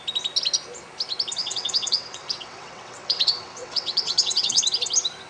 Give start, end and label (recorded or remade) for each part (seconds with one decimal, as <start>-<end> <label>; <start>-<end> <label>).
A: 0.0-1.4 recorded; 1.4-4.6 remade; 4.6-5.3 recorded